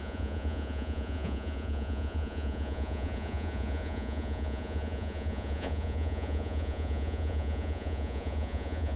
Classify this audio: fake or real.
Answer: fake